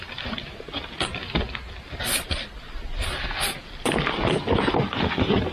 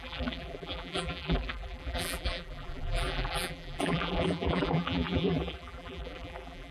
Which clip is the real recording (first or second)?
first